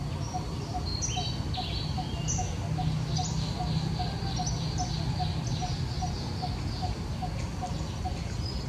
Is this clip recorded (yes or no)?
yes